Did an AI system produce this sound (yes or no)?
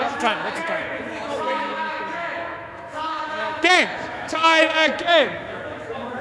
yes